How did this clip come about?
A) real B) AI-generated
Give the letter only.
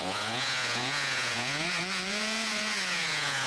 B